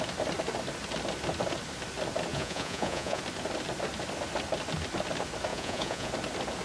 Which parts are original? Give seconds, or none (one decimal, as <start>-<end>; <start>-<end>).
0.0-2.3; 3.2-5.5; 6.1-6.6